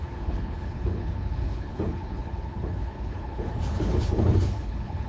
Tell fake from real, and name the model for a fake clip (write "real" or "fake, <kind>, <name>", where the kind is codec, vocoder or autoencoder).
fake, codec, HILCodec